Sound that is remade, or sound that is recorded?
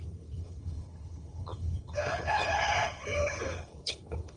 remade